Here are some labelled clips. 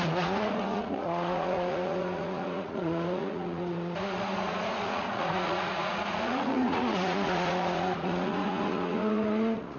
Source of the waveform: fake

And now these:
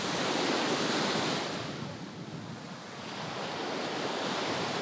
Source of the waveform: real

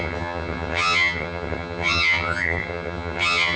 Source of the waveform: fake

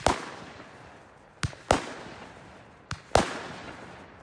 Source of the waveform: real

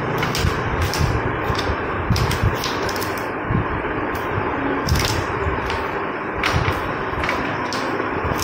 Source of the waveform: real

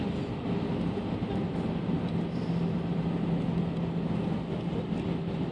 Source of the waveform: real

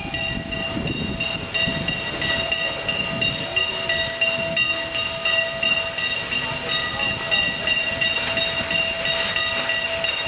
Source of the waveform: real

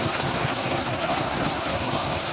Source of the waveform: fake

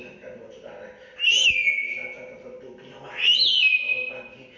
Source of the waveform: real